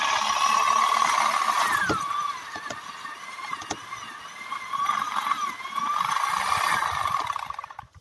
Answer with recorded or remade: recorded